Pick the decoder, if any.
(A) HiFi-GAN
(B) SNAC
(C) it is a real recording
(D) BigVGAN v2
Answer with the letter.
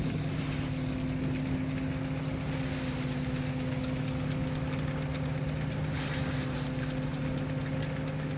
C